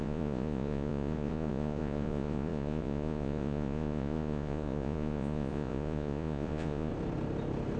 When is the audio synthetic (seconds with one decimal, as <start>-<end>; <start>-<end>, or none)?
0.0-6.9